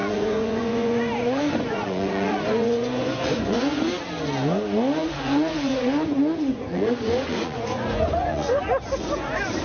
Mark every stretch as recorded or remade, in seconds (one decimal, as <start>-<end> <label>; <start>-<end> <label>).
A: 0.0-3.8 remade; 3.8-5.0 recorded; 5.0-8.6 remade; 8.6-9.6 recorded